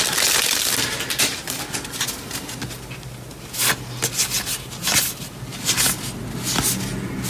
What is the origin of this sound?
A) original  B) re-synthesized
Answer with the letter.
A